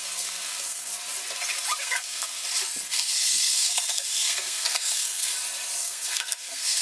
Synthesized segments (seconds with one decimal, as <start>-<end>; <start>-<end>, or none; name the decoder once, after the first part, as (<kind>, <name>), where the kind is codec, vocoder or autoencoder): 0.0-0.9 (codec, SNAC); 1.8-2.4; 2.9-5.3; 5.8-6.8